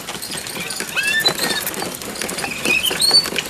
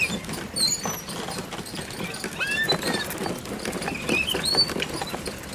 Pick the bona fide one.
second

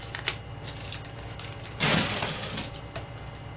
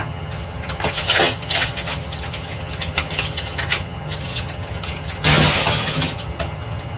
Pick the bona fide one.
first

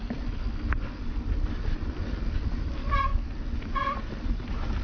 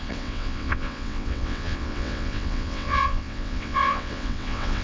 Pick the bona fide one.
first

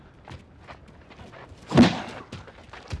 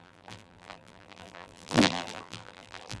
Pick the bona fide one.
first